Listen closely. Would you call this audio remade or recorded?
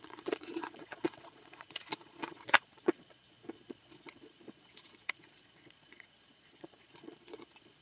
remade